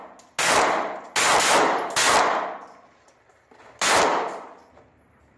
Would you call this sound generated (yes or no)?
no